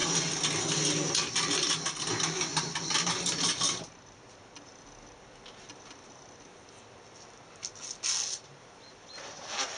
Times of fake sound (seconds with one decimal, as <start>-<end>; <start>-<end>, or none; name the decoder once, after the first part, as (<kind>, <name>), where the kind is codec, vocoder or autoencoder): none